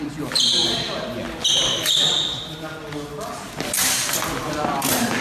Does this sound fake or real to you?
real